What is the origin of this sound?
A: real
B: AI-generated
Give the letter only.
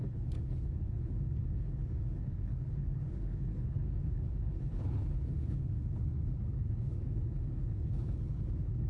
B